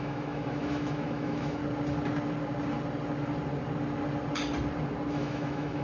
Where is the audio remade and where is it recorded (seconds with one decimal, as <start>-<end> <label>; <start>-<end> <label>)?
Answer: 0.0-1.6 remade; 1.6-5.1 recorded; 5.1-5.8 remade